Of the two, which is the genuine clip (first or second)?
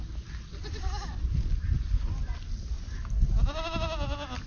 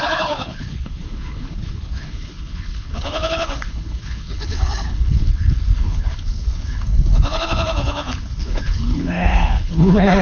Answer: first